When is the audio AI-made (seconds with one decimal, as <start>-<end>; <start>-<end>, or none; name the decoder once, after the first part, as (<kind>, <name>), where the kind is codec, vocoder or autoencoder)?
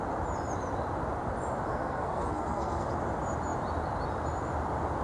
1.7-2.9 (codec, SNAC)